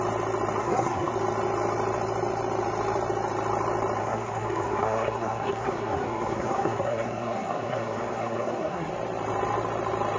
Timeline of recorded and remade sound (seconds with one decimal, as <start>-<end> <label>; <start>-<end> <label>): 0.0-0.6 recorded; 0.6-1.1 remade; 1.1-4.0 recorded; 4.0-8.9 remade; 8.9-10.2 recorded